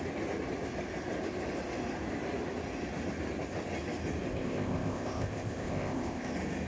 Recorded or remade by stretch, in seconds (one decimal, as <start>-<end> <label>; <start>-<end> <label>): 0.0-4.3 recorded; 4.3-6.3 remade; 6.3-6.7 recorded